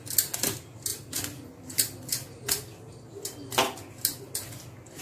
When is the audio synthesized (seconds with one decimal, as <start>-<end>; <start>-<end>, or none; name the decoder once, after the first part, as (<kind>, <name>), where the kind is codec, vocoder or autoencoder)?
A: none

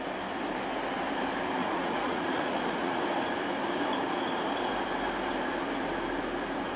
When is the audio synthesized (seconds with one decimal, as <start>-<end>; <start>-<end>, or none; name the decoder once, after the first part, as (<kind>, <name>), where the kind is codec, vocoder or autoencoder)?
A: 1.6-3.0 (vocoder, Vocos)

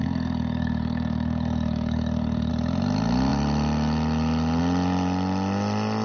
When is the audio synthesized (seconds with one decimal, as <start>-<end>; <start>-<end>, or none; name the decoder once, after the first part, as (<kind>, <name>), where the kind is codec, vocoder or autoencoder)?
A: 0.0-2.5 (codec, DAC)

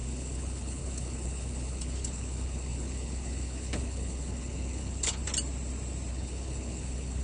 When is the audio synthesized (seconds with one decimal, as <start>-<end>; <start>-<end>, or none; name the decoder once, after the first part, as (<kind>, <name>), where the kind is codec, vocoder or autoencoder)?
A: 0.0-5.2 (codec, HILCodec); 6.1-7.2

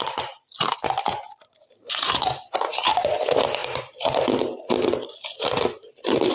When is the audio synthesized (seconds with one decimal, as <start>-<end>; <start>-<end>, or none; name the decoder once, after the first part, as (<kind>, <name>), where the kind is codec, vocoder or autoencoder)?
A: 0.0-6.3 (vocoder, BigVGAN v2)

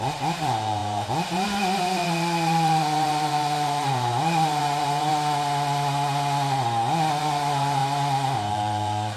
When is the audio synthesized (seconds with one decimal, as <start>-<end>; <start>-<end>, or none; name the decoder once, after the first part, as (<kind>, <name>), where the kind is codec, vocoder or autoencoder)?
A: 0.0-5.1 (vocoder, BigVGAN v2); 7.2-7.8; 8.5-9.2

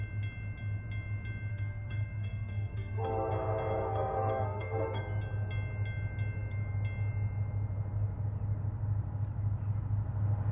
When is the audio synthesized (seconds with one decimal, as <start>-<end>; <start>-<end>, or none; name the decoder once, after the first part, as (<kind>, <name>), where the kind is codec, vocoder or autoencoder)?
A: 1.5-3.3 (codec, SNAC); 3.7-5.0

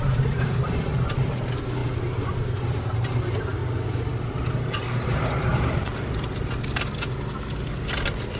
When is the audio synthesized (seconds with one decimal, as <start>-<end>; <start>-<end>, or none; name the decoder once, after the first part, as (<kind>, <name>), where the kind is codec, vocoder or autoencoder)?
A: 0.0-3.6 (vocoder, BigVGAN v2); 4.8-5.5; 8.0-8.4